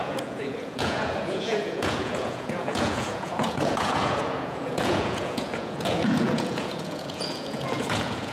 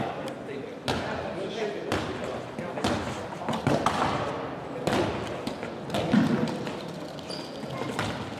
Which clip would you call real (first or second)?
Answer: second